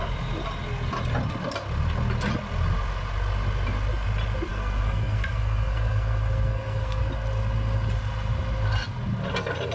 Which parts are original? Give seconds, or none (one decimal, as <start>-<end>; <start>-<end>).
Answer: 0.0-4.5; 7.0-9.7